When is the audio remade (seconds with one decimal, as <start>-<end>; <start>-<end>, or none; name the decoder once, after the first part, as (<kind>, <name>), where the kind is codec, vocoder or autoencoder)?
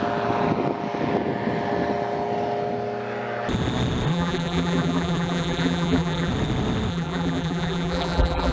4.1-6.3 (vocoder, BigVGAN v2); 6.9-8.5